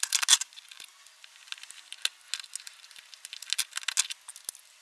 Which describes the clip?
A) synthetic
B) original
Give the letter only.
B